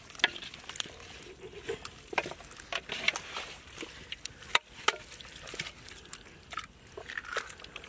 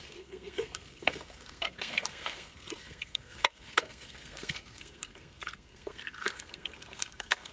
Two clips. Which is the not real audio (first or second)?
second